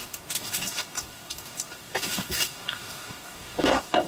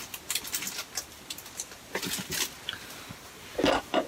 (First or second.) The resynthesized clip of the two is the first